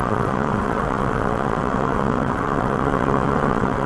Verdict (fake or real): fake